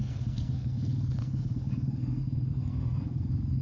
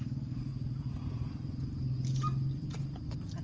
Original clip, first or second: second